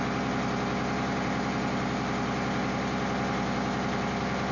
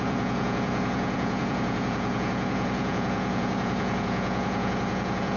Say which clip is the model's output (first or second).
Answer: second